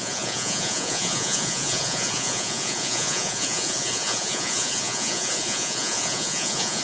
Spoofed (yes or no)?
yes